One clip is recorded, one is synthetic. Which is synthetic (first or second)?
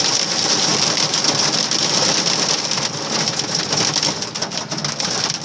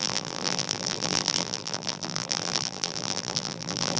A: second